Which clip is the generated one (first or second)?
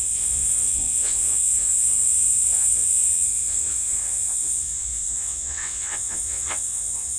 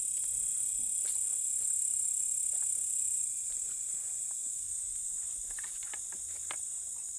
first